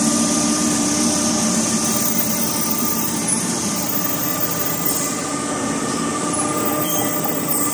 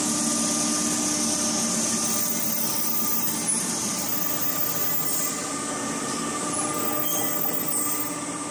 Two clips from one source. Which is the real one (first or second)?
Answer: second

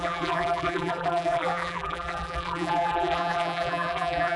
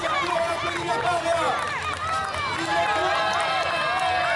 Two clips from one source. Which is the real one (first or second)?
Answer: second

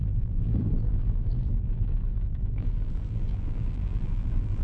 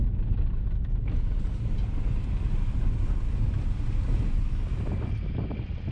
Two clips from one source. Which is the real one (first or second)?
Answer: second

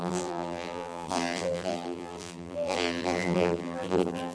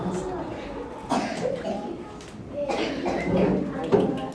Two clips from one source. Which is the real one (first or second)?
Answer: second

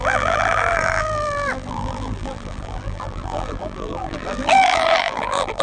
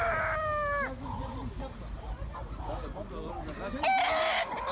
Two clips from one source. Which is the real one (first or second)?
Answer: second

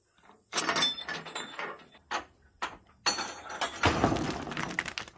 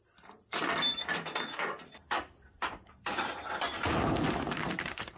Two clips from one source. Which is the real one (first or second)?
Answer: first